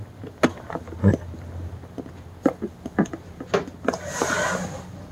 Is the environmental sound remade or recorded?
recorded